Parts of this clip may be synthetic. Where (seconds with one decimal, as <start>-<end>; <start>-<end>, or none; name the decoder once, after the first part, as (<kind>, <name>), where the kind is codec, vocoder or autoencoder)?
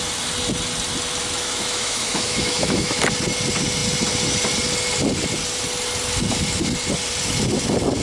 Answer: 1.2-3.0 (autoencoder, DAC-VAE)